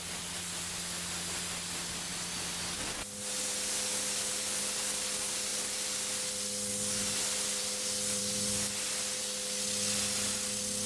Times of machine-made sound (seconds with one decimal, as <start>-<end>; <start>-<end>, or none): none